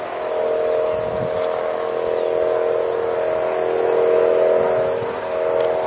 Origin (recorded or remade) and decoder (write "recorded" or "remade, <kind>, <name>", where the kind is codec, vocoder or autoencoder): recorded